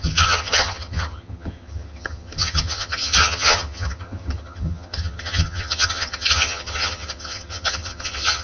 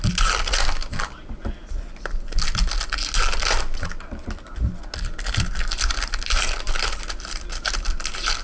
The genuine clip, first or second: second